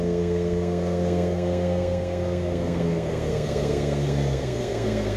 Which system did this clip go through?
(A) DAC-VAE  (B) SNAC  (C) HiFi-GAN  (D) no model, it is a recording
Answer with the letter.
B